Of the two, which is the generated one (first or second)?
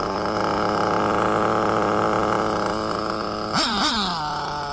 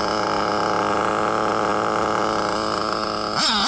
first